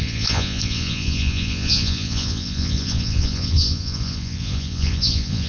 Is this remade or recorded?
remade